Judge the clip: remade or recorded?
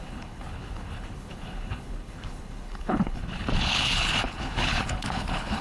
remade